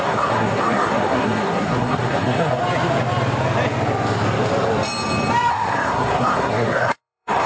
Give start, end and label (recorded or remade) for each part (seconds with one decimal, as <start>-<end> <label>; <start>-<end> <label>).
0.0-2.6 remade; 2.6-5.5 recorded; 5.5-7.5 remade